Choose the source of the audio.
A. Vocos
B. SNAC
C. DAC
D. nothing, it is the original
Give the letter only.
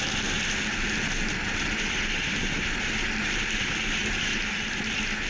D